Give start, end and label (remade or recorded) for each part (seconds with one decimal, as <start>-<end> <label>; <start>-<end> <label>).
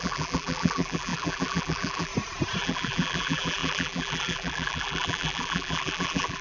0.0-2.1 remade; 2.1-2.6 recorded; 2.6-6.4 remade